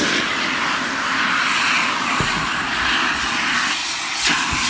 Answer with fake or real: real